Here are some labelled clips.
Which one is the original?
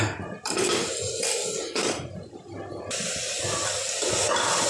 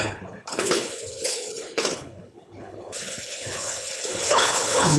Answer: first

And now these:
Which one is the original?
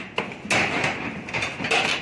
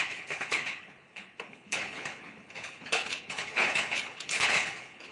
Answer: first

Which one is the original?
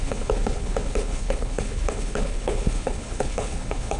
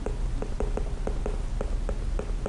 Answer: second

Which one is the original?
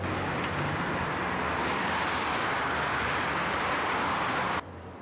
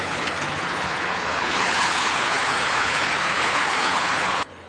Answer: first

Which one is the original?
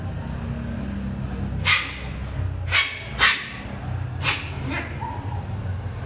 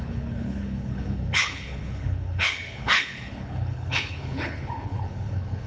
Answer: first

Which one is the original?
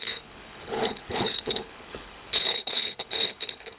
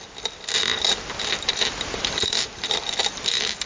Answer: second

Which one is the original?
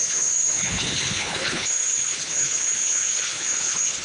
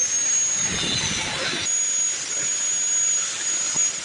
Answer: second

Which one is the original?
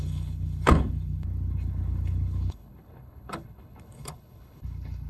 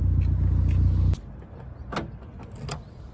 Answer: second